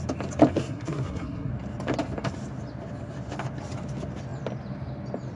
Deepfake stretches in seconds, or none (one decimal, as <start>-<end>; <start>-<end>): 0.5-1.5